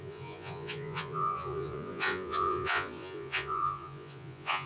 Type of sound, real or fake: fake